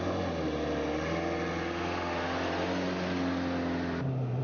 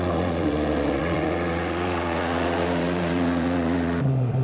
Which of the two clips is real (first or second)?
first